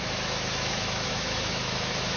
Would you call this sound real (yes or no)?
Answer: no